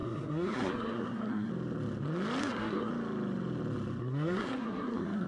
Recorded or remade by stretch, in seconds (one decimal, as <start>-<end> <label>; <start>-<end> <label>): 0.0-1.5 remade; 1.5-2.4 recorded; 2.4-2.9 remade; 2.9-4.0 recorded; 4.0-5.3 remade